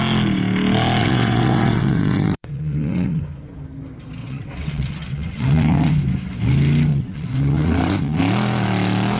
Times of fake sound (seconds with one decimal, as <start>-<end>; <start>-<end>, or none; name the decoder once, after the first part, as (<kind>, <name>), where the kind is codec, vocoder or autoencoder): 1.0-3.2 (vocoder, WaveNeXt); 4.2-5.9; 6.9-8.2